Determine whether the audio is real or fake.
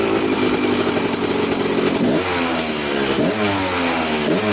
real